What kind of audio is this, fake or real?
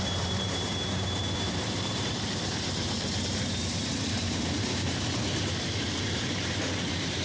fake